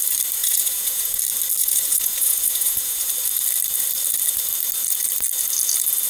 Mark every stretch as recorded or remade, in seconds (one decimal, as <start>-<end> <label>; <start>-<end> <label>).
0.0-0.4 recorded; 0.4-1.2 remade; 1.2-1.6 recorded; 1.6-3.1 remade; 3.1-6.1 recorded